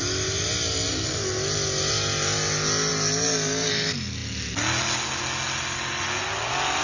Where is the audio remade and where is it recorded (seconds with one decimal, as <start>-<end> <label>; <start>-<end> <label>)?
0.0-6.8 recorded